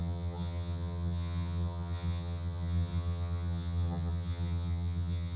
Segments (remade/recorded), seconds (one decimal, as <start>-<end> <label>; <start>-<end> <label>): 0.0-5.4 remade